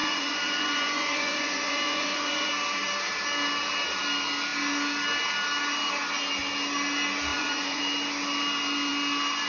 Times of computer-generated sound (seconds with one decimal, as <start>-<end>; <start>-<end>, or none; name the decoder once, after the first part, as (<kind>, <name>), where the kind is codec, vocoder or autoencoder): 0.0-2.5 (vocoder, Vocos); 7.3-7.8